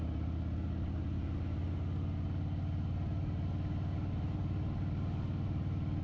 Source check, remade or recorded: recorded